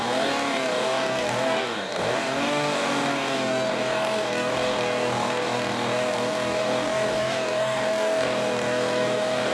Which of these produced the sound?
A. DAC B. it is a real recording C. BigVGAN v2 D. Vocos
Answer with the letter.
A